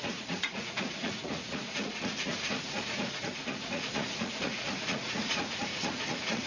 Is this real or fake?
fake